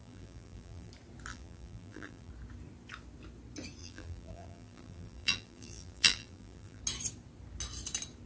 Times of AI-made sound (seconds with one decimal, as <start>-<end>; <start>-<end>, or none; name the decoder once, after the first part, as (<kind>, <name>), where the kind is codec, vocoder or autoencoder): 0.0-0.9 (vocoder, BigVGAN v2); 1.3-2.3; 3.8-6.8